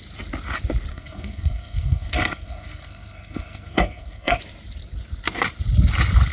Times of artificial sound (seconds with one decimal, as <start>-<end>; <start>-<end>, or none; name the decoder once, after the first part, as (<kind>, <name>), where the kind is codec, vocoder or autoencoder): 0.9-4.4 (codec, SNAC)